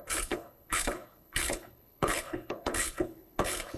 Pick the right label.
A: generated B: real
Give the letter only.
A